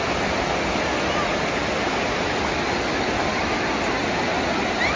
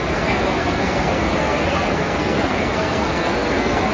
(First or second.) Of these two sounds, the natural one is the first